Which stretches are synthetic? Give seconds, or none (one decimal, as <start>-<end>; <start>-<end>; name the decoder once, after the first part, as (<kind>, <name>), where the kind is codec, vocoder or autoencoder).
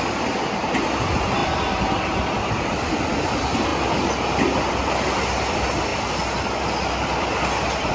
none